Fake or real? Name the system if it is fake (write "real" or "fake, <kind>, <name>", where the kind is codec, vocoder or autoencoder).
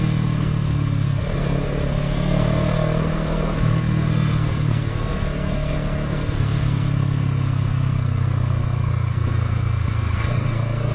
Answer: fake, codec, SNAC